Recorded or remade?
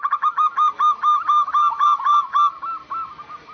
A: recorded